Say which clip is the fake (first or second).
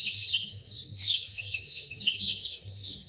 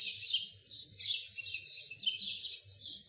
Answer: first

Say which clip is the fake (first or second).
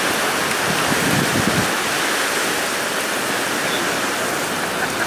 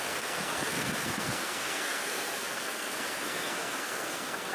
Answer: second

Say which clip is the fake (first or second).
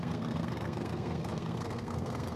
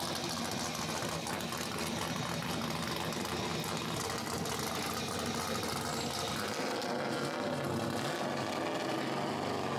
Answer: first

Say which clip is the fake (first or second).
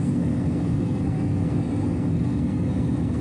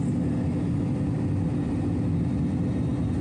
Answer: first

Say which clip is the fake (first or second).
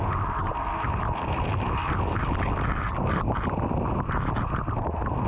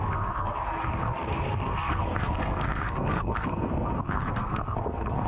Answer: second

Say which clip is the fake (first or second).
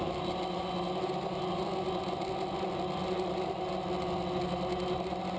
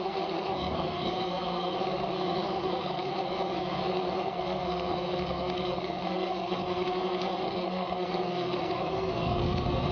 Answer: second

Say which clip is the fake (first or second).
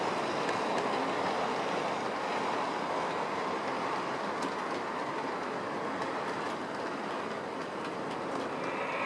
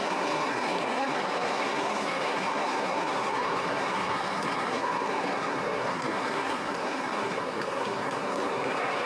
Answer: second